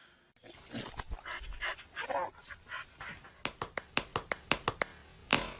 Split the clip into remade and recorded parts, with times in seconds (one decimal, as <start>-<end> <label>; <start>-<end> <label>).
0.0-5.6 recorded